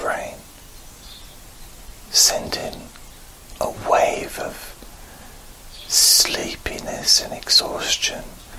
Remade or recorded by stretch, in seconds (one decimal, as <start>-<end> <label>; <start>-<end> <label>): 0.0-0.6 remade; 0.6-8.6 recorded